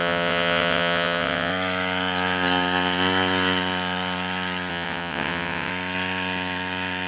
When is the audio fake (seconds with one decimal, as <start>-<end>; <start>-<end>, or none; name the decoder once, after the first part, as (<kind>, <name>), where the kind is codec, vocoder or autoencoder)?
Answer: 0.0-1.5 (vocoder, WaveNeXt); 4.7-5.7